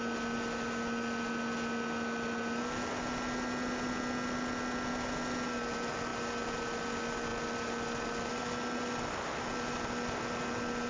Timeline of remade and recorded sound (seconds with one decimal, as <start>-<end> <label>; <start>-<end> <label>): 0.0-10.9 recorded

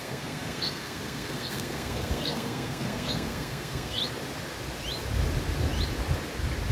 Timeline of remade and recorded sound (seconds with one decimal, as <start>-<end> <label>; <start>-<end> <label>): 0.0-4.0 remade; 4.0-6.7 recorded

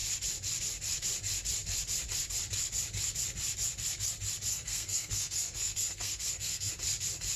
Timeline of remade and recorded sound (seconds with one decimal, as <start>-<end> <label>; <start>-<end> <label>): 0.0-4.5 recorded; 4.5-6.7 remade; 6.7-7.4 recorded

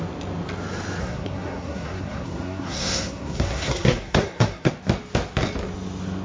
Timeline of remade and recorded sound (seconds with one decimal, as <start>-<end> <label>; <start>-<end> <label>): 0.0-1.0 recorded; 1.0-4.7 remade; 4.7-6.2 recorded

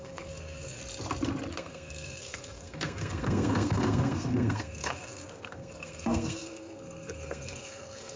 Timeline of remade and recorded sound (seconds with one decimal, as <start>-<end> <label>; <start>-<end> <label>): 0.0-0.8 remade; 0.8-1.5 recorded; 1.5-8.2 remade

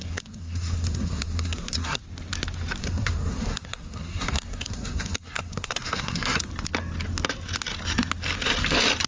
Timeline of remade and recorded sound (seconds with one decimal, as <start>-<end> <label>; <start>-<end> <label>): 0.0-2.0 remade; 2.0-2.8 recorded; 2.8-6.5 remade; 6.5-9.1 recorded

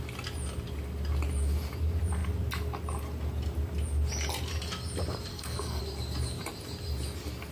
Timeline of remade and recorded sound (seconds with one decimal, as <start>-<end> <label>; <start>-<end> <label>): 0.0-5.3 recorded; 5.3-5.8 remade; 5.8-7.5 recorded

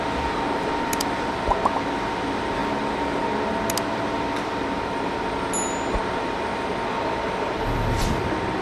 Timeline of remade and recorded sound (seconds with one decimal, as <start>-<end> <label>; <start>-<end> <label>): 0.0-8.6 recorded